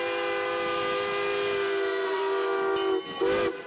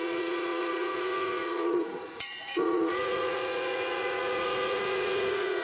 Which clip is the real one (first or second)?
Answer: first